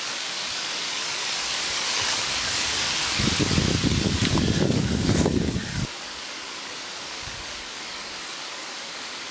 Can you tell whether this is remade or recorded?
remade